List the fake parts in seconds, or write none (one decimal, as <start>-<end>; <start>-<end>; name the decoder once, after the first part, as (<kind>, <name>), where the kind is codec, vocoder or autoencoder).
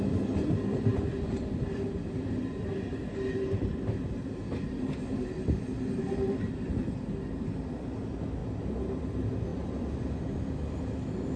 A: none